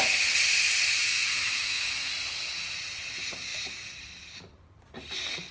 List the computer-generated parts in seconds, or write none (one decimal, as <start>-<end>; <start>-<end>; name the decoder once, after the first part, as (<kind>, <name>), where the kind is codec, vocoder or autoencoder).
1.0-2.1 (autoencoder, DAC-VAE)